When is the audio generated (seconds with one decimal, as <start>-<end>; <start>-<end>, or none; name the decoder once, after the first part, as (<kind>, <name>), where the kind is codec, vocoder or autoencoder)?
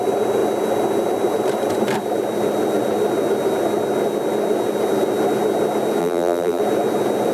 6.0-6.6 (vocoder, BigVGAN v2)